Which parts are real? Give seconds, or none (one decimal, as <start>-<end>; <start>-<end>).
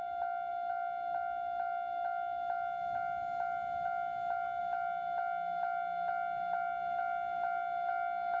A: 0.0-8.4